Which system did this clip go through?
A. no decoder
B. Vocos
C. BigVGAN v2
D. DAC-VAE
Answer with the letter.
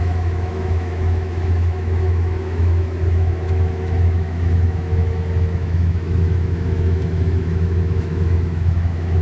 D